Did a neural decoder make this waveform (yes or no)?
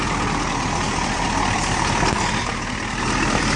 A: no